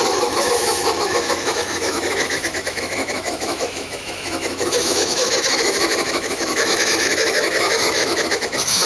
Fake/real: fake